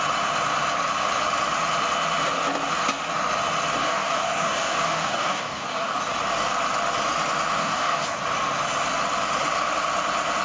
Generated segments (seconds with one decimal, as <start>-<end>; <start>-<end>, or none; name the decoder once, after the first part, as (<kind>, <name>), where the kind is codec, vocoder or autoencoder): 3.8-6.0 (codec, DAC); 7.6-8.2